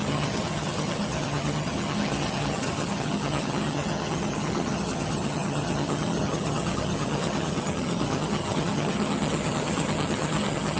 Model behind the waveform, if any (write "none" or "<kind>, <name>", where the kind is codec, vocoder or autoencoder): vocoder, HiFi-GAN